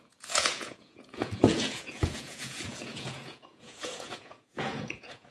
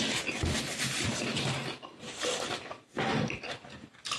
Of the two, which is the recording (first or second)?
second